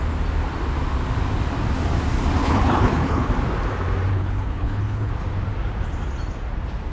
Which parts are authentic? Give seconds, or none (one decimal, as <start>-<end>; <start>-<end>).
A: 0.0-2.4; 3.3-4.1; 5.1-6.9